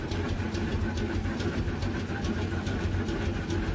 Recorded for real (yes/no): yes